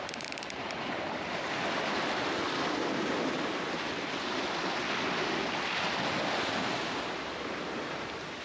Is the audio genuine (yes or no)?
yes